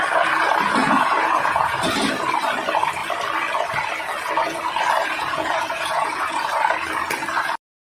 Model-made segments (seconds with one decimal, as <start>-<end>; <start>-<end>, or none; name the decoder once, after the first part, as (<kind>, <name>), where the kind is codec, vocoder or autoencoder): 0.8-2.1 (vocoder, Vocos); 5.0-6.5